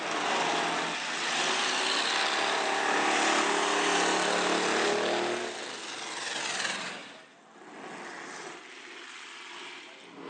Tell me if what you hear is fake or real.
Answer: real